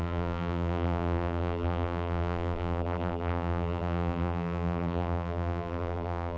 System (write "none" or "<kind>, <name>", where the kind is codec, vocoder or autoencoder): vocoder, BigVGAN v2